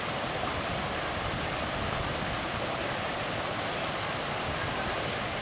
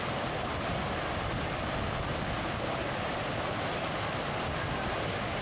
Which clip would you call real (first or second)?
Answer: second